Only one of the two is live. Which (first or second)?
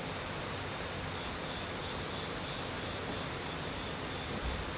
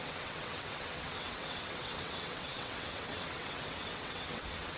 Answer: first